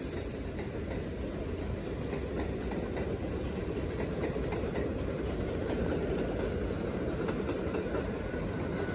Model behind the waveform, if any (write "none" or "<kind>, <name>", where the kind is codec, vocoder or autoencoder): none